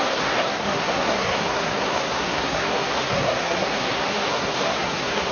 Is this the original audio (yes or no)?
no